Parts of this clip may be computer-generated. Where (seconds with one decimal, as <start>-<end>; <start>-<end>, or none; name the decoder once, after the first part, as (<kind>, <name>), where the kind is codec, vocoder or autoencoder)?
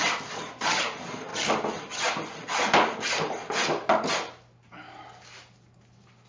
none